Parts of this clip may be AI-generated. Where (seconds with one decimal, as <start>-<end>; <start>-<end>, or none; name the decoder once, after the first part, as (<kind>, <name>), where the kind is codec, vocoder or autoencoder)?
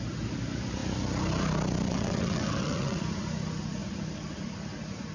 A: 1.9-3.0 (vocoder, WaveNeXt)